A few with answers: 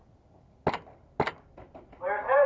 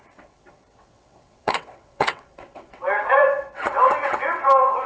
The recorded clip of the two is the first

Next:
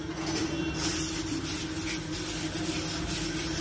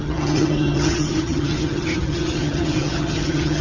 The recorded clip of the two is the first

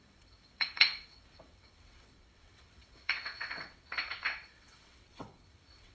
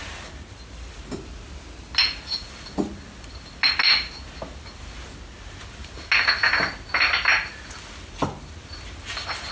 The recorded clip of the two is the second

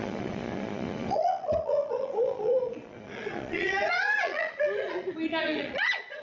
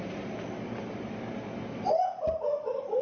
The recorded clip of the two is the second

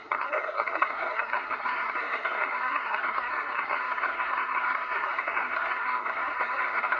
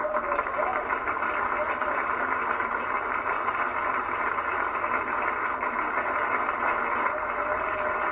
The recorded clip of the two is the second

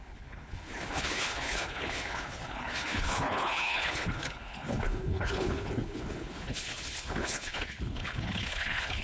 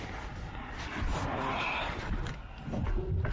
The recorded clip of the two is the second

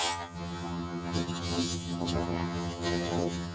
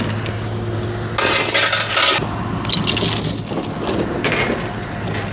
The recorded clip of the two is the second